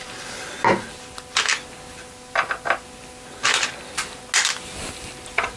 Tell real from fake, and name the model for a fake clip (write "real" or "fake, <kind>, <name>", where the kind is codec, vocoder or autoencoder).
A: real